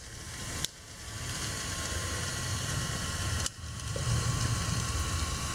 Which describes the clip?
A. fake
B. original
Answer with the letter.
A